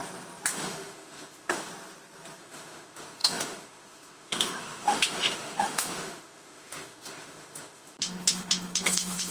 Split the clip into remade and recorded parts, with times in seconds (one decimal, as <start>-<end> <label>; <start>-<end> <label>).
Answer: 0.0-0.5 recorded; 0.5-1.7 remade; 1.7-2.4 recorded; 2.4-9.3 remade